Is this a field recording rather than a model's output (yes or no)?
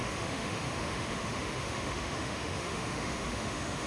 no